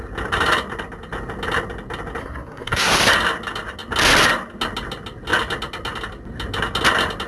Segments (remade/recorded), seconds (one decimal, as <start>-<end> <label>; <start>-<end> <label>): 0.0-2.2 recorded; 2.2-2.9 remade; 2.9-7.3 recorded